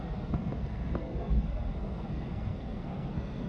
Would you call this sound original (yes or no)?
no